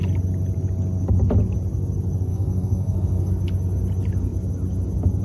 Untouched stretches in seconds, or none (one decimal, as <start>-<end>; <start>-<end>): 0.0-2.3; 3.3-5.2